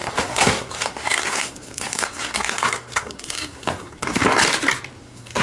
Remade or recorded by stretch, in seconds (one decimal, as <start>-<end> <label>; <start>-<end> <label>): 0.0-4.2 remade; 4.2-5.0 recorded; 5.0-5.4 remade

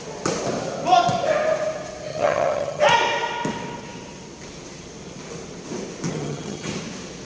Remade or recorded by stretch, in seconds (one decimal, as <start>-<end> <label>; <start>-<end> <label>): 0.0-2.1 recorded; 2.1-2.8 remade; 2.8-6.1 recorded; 6.1-6.7 remade; 6.7-7.2 recorded